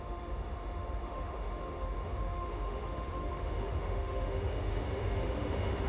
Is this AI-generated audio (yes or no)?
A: yes